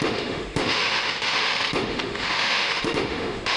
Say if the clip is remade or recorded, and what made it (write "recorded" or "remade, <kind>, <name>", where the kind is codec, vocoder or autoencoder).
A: remade, autoencoder, DAC-VAE